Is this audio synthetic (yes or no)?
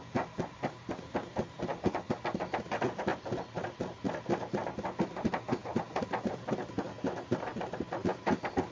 no